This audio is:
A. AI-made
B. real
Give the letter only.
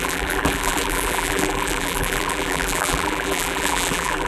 A